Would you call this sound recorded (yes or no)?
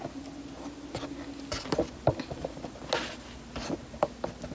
yes